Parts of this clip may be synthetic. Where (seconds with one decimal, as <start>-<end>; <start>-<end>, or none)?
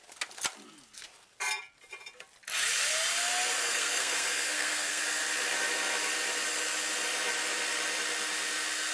3.6-5.0